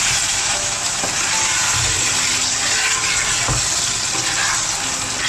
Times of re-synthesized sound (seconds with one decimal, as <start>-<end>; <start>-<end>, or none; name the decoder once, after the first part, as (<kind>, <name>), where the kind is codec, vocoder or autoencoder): 0.4-1.0 (autoencoder, DAC-VAE)